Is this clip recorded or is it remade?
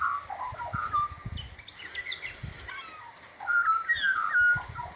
recorded